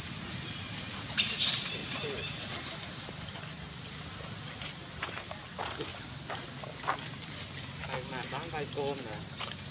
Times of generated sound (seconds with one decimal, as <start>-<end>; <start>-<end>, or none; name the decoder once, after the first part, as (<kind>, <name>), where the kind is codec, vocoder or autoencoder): 0.0-1.8 (vocoder, BigVGAN v2); 3.5-5.9; 9.0-9.7